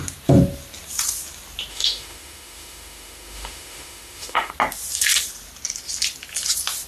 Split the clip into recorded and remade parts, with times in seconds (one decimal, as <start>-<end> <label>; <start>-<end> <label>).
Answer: 0.0-1.7 recorded; 1.7-4.5 remade; 4.5-6.9 recorded